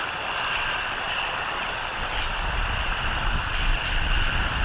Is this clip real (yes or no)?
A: yes